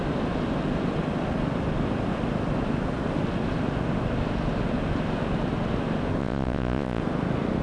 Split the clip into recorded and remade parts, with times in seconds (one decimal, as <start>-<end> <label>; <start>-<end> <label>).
0.0-6.2 recorded; 6.2-7.0 remade; 7.0-7.6 recorded